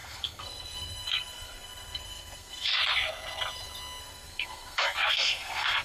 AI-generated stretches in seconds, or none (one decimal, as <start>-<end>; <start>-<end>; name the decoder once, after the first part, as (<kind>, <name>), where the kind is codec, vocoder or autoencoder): 0.0-2.7 (codec, SNAC); 4.0-5.8